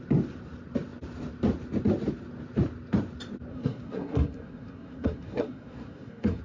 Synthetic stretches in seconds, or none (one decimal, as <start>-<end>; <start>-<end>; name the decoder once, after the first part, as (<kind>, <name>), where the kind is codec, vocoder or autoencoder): 3.5-6.4 (codec, SNAC)